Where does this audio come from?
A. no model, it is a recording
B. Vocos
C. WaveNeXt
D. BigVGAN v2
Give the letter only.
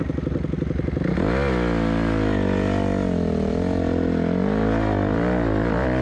A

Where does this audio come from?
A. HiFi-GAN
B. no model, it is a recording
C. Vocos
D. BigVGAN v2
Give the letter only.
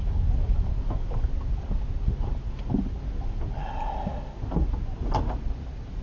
B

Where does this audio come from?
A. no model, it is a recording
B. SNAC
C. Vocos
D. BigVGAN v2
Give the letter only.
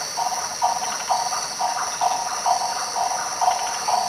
A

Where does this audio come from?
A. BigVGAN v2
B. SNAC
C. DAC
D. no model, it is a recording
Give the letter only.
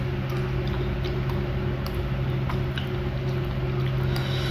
D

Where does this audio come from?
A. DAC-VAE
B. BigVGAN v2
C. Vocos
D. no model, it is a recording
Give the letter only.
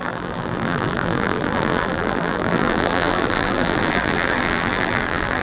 B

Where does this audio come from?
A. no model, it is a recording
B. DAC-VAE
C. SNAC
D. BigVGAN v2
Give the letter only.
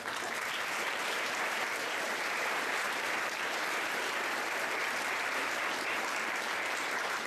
D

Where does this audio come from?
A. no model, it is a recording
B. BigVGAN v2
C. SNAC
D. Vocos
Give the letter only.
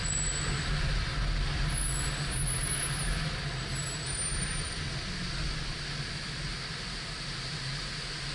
A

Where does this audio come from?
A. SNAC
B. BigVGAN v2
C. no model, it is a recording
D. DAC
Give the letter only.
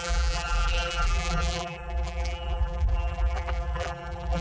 B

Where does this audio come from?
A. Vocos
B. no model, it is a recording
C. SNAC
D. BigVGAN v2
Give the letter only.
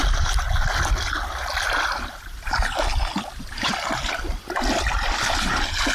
B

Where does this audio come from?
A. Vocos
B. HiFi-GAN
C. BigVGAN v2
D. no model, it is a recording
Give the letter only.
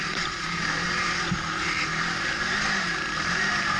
C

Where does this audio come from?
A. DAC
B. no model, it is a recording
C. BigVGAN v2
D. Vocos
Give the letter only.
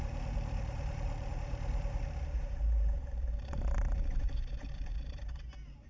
C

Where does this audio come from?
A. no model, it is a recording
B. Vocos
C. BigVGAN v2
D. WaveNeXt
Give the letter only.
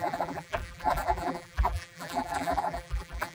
C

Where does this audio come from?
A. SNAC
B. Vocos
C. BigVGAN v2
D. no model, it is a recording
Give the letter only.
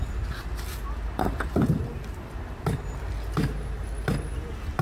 D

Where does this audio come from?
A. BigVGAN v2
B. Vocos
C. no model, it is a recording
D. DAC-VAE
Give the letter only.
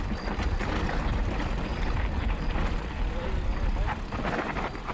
C